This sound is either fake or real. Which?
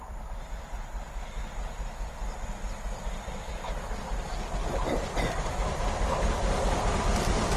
fake